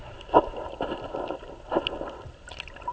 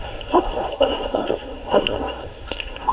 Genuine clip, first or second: first